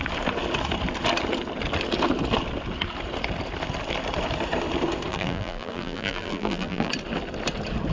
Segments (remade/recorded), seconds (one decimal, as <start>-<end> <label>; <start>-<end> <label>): 0.0-5.1 recorded; 5.1-6.9 remade; 6.9-7.9 recorded